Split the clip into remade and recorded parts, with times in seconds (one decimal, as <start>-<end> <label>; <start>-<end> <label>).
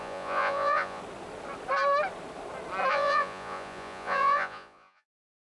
0.0-1.0 remade; 1.0-2.9 recorded; 2.9-5.6 remade